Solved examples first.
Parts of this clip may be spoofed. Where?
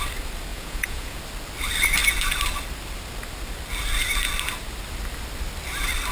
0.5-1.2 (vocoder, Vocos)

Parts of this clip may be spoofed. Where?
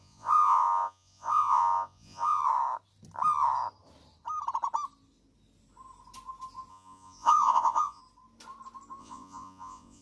0.0-2.4 (vocoder, Vocos); 6.7-8.0; 9.0-10.0